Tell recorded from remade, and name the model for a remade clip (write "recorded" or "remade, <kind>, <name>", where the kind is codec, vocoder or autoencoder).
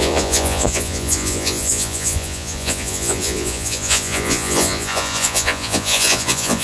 remade, vocoder, Vocos